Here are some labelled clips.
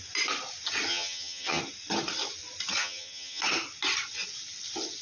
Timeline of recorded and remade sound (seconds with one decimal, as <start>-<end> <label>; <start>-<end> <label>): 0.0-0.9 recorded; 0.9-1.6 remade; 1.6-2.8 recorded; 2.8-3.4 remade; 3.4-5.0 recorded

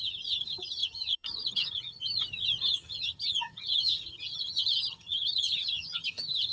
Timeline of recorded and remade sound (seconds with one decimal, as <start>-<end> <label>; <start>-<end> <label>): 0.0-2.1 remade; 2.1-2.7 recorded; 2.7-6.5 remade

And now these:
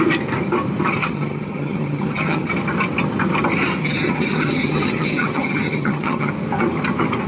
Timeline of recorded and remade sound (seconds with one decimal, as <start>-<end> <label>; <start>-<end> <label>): 0.0-1.0 recorded; 1.0-2.5 remade; 2.5-3.8 recorded; 3.8-6.3 remade; 6.3-7.3 recorded